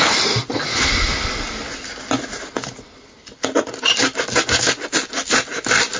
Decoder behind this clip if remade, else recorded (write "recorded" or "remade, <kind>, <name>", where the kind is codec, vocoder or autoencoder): recorded